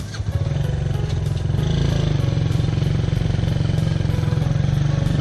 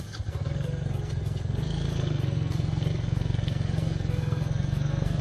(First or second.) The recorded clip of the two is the first